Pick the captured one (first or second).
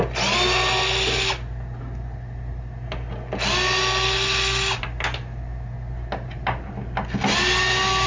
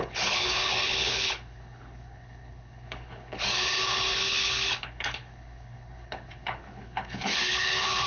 first